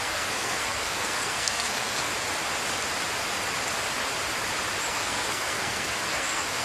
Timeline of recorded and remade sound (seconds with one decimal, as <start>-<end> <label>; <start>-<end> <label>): 0.0-2.1 remade; 2.1-4.9 recorded; 4.9-6.6 remade